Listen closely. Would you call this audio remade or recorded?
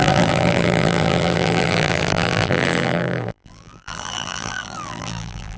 remade